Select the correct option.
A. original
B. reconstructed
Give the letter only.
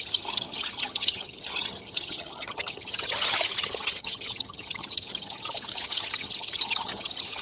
B